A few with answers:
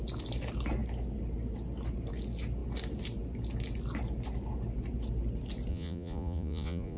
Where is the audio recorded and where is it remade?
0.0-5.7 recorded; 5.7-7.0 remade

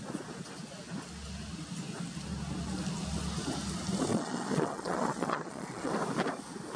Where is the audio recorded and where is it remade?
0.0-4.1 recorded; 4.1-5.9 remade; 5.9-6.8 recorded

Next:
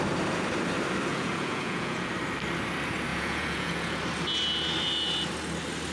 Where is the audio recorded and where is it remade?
0.0-1.1 recorded; 1.1-2.1 remade; 2.1-3.1 recorded; 3.1-4.0 remade; 4.0-5.9 recorded